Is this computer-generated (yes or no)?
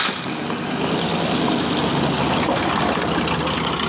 no